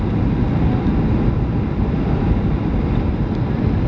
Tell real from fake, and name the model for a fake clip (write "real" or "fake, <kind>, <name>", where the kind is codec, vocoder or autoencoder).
real